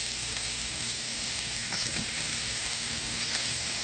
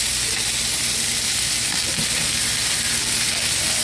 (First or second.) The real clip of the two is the second